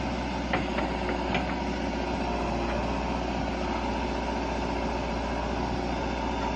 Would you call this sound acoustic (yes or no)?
yes